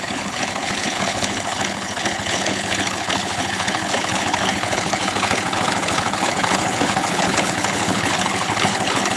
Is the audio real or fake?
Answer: fake